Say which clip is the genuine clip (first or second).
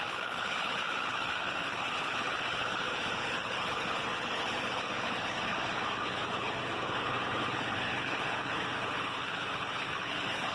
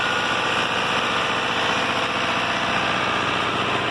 second